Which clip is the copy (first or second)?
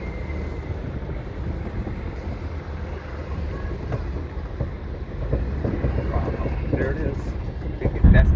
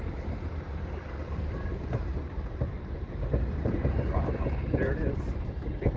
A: second